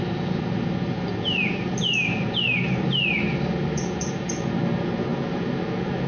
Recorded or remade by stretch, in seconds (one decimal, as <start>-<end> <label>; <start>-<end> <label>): 0.0-6.1 recorded